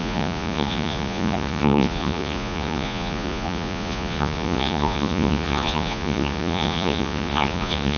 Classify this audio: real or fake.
fake